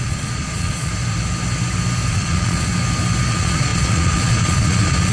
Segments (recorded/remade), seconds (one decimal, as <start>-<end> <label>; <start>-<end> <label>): 0.0-0.9 remade; 0.9-2.1 recorded; 2.1-2.7 remade; 2.7-3.3 recorded; 3.3-5.1 remade